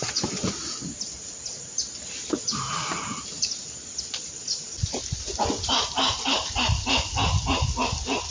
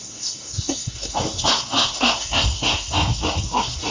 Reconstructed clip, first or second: second